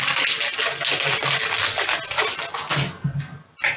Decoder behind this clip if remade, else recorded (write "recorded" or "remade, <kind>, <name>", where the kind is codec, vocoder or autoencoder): recorded